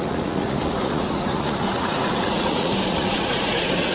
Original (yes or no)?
no